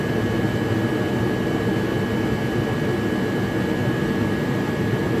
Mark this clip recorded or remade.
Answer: recorded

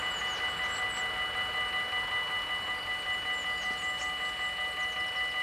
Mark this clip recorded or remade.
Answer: recorded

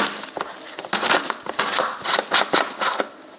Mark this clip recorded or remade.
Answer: recorded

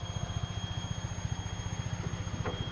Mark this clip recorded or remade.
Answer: recorded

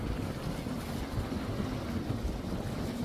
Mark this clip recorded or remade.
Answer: recorded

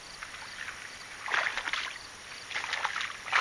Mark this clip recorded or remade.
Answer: recorded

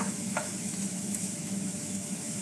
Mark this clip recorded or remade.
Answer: remade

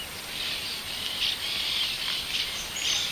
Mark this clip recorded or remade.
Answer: recorded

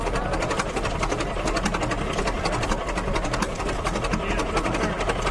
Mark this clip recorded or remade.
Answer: recorded